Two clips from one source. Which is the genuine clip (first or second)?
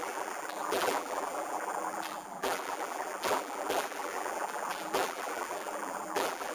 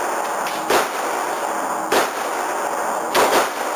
second